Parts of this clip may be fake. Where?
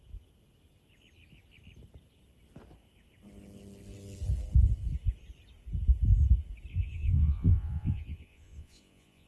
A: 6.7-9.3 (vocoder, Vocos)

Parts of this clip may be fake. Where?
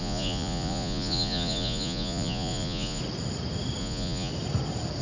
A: 0.0-3.0 (vocoder, Vocos); 3.8-4.3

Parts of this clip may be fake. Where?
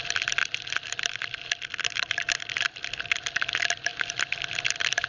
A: none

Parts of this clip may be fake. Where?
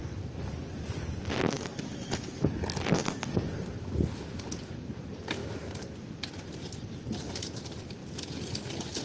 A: none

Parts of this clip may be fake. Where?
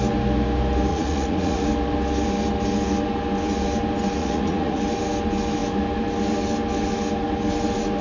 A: 0.9-1.6 (vocoder, Vocos); 4.2-4.8